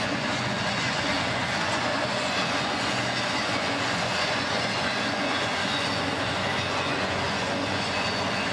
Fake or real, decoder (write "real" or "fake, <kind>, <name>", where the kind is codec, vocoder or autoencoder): fake, vocoder, Vocos